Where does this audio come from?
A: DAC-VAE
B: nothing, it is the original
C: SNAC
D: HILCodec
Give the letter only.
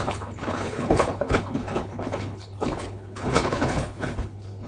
D